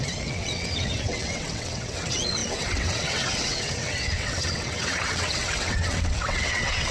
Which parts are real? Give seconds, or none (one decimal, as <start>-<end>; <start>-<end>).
none